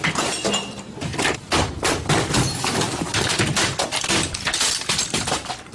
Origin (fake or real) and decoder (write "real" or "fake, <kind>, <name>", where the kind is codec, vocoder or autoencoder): fake, vocoder, BigVGAN v2